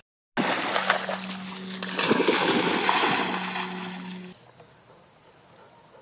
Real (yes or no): yes